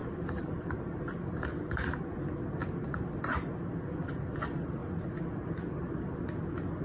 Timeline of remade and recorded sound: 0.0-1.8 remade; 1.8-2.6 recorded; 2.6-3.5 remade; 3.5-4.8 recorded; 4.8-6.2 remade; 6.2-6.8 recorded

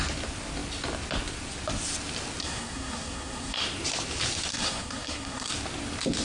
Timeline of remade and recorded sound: 0.0-2.4 recorded; 2.4-3.6 remade; 3.6-4.5 recorded; 4.5-5.5 remade; 5.5-6.2 recorded

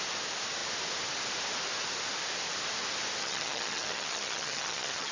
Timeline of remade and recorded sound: 0.0-3.2 recorded; 3.2-5.1 remade

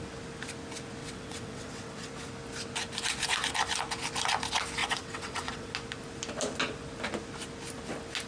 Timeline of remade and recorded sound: 0.0-1.0 recorded; 1.0-2.1 remade; 2.1-4.8 recorded; 4.8-5.7 remade; 5.7-8.3 recorded